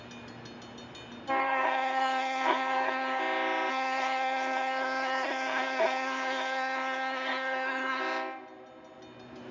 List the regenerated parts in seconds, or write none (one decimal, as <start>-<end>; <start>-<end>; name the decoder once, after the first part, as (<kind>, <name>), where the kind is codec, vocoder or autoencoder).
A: 1.4-3.2 (codec, SNAC); 3.7-8.0